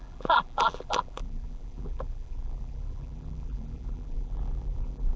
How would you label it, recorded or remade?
remade